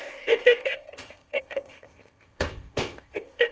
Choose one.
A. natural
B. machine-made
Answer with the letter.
B